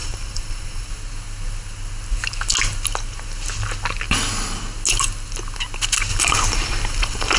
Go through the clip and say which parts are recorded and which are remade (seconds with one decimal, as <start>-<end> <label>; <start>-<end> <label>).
0.0-0.9 remade; 0.9-6.1 recorded; 6.1-7.4 remade

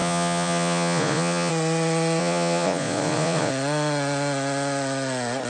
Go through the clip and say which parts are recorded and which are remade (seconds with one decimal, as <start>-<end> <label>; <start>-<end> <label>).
0.0-1.5 remade; 1.5-2.2 recorded; 2.2-3.5 remade; 3.5-5.5 recorded